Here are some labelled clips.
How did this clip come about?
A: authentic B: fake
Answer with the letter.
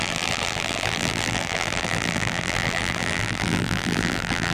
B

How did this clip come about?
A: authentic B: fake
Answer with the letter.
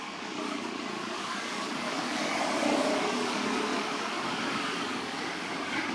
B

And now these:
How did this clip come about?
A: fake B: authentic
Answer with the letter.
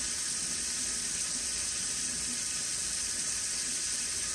B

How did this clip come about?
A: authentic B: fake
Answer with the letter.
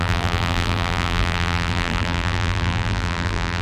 B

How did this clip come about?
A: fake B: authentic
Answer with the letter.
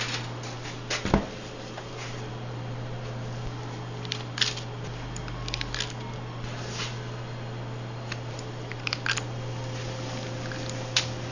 B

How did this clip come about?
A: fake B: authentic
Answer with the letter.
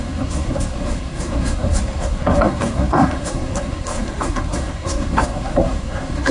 A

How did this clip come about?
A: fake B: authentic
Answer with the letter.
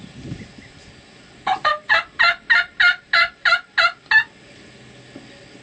B